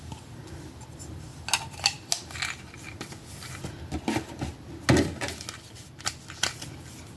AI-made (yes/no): no